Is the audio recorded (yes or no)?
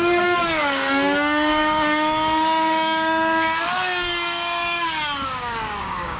no